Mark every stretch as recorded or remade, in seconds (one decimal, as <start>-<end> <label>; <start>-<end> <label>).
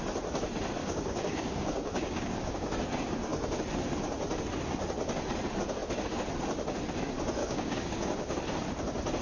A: 0.0-0.8 recorded; 0.8-2.7 remade; 2.7-7.4 recorded; 7.4-8.4 remade; 8.4-9.2 recorded